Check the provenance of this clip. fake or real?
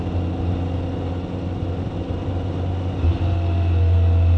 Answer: real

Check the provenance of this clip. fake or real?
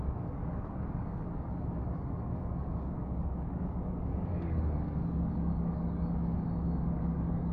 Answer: fake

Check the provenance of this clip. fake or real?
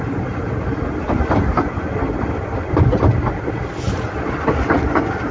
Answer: real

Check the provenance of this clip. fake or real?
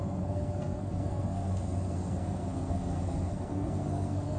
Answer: fake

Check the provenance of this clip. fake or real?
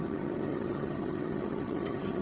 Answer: fake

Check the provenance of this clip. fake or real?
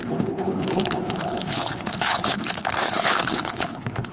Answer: fake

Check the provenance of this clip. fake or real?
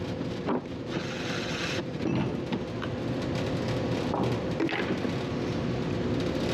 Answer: real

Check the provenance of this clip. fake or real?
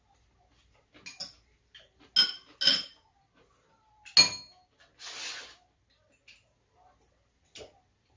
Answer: real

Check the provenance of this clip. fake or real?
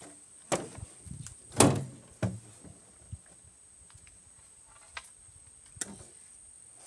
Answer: real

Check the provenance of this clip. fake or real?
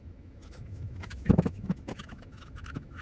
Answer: fake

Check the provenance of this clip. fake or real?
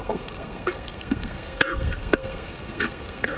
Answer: fake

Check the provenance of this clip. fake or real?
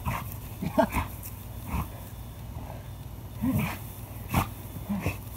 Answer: real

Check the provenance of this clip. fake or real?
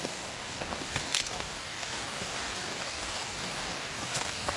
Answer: fake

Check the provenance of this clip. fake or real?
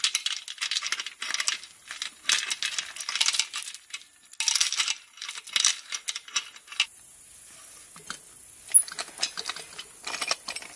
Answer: real